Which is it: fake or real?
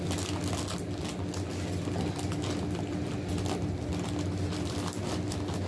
real